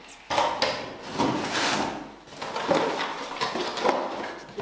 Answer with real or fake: real